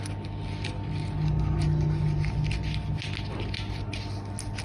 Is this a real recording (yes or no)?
yes